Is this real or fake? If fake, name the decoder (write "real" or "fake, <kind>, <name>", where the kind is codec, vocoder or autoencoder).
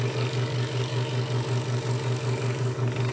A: fake, codec, DAC